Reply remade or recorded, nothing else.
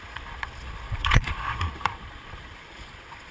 remade